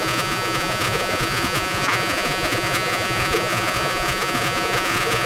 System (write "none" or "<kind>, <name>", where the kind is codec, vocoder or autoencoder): vocoder, Vocos